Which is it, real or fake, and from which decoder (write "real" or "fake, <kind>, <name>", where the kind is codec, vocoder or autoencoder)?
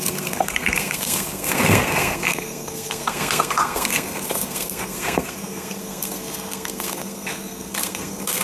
fake, codec, SNAC